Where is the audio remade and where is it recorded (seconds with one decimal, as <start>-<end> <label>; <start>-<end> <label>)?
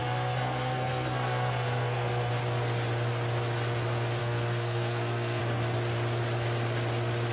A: 0.0-2.3 remade; 2.3-4.2 recorded; 4.2-5.4 remade; 5.4-7.3 recorded